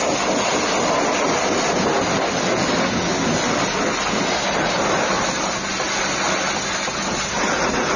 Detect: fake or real real